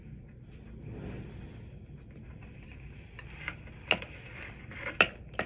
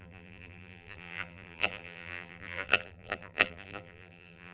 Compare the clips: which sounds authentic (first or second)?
first